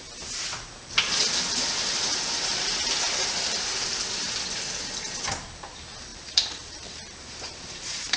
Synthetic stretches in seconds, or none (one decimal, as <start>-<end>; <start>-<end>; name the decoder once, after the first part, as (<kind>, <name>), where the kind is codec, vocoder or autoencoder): 6.1-8.2 (vocoder, BigVGAN v2)